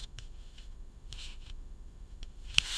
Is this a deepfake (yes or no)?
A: yes